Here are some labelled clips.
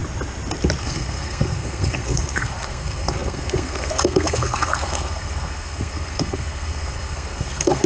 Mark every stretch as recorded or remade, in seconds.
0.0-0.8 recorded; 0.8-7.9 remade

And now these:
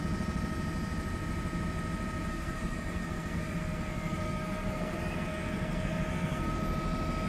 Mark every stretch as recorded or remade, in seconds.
0.0-2.3 recorded; 2.3-6.5 remade; 6.5-7.3 recorded

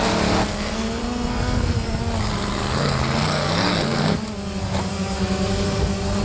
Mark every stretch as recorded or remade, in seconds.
0.0-0.5 recorded; 0.5-2.0 remade; 2.0-2.6 recorded; 2.6-4.2 remade; 4.2-4.8 recorded; 4.8-6.2 remade

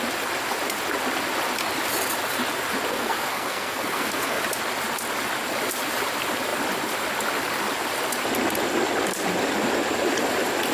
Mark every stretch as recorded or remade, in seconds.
0.0-2.9 recorded; 2.9-4.4 remade; 4.4-10.7 recorded

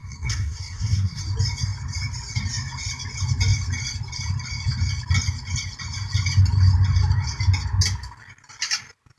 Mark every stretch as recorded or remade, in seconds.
0.0-1.2 remade; 1.2-9.2 recorded

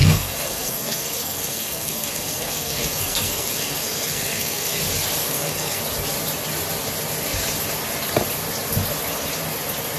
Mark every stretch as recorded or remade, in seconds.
0.0-4.8 remade; 4.8-5.2 recorded; 5.2-5.8 remade; 5.8-10.0 recorded

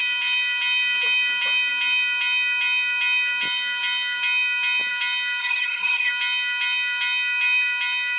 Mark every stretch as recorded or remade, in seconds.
0.0-5.4 recorded; 5.4-6.1 remade; 6.1-8.2 recorded